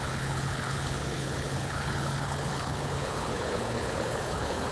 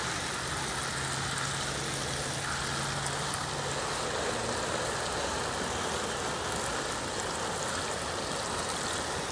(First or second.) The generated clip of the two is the first